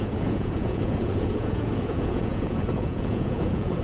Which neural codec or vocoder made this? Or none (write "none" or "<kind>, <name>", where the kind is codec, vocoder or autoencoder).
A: vocoder, Vocos